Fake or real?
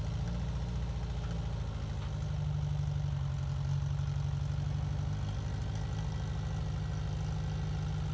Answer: real